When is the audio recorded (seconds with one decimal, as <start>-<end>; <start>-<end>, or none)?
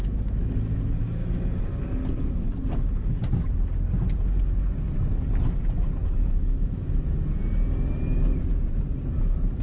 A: 1.6-6.0; 7.0-9.6